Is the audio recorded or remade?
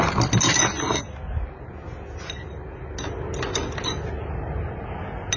recorded